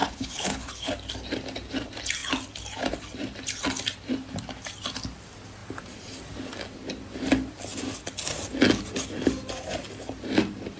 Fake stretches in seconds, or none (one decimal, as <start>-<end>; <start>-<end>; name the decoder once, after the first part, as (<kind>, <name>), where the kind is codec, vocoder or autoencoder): 0.0-0.9 (codec, HILCodec)